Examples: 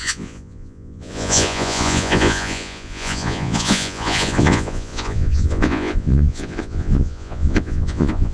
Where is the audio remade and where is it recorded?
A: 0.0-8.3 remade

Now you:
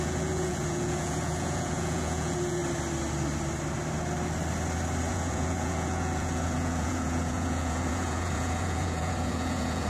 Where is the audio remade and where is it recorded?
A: 0.0-2.6 remade; 2.6-5.1 recorded; 5.1-9.9 remade

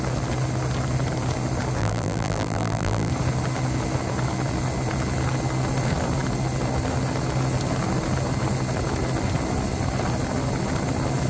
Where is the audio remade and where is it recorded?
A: 0.0-1.8 recorded; 1.8-3.1 remade; 3.1-11.3 recorded